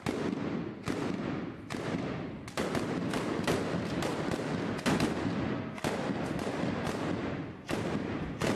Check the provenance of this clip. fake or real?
real